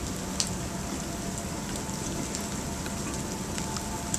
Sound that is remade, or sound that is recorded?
recorded